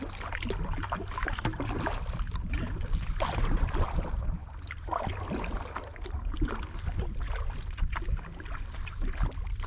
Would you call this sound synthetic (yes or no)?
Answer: no